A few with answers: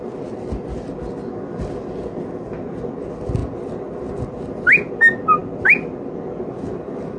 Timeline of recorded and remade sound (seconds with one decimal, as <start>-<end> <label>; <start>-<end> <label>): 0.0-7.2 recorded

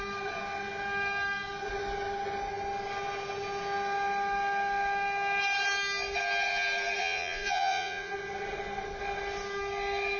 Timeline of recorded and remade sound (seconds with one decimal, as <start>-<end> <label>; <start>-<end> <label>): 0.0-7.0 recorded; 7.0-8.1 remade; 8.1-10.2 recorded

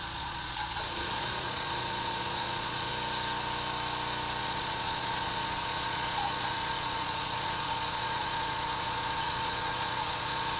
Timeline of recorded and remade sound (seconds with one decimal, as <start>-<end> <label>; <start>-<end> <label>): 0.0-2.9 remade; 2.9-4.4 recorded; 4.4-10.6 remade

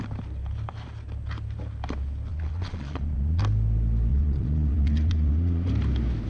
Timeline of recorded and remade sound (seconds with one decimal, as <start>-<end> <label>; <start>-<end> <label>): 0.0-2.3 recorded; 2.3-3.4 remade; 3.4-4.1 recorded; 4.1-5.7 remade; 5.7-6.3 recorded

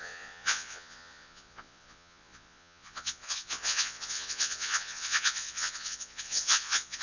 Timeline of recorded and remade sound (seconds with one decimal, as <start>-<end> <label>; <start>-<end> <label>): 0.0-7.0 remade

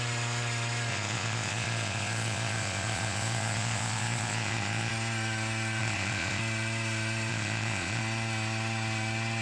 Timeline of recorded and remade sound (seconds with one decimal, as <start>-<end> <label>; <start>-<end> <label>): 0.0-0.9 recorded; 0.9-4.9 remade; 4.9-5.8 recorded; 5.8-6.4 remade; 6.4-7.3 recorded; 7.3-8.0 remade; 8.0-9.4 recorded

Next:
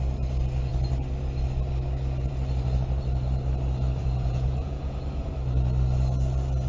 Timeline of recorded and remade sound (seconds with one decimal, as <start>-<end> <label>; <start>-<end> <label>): 0.0-4.0 recorded; 4.0-5.3 remade; 5.3-6.7 recorded

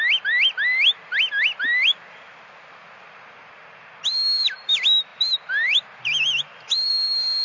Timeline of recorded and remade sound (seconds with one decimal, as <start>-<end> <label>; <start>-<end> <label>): 0.0-7.4 recorded